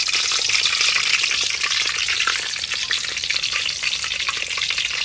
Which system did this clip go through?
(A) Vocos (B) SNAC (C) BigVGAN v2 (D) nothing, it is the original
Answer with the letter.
D